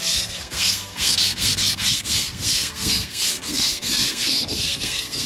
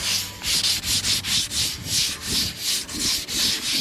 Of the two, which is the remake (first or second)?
first